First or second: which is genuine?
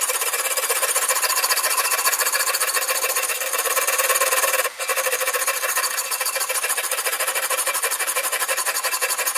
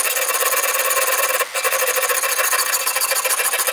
second